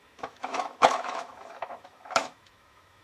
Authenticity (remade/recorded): remade